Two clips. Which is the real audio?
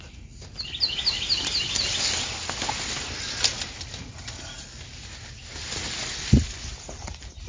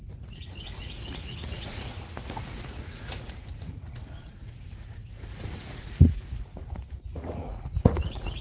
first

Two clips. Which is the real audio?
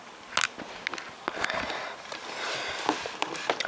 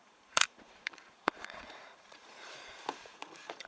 first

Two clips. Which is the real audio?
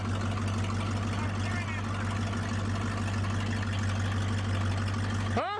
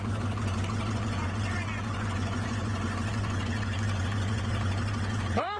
first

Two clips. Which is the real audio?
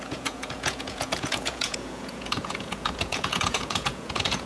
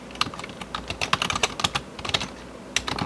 second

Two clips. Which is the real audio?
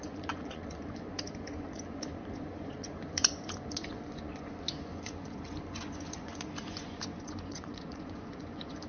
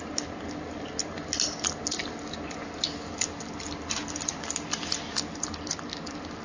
second